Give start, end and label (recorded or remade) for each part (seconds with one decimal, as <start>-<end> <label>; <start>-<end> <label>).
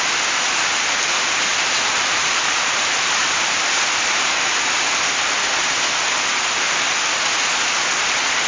0.0-1.5 recorded; 1.5-4.8 remade; 4.8-8.5 recorded